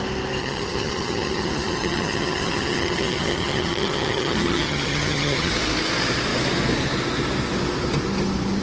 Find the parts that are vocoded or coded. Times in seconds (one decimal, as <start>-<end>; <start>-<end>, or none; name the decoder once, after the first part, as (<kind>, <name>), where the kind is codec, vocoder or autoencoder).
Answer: 0.4-5.5 (vocoder, HiFi-GAN)